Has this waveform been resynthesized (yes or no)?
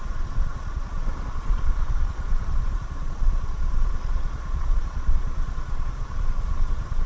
yes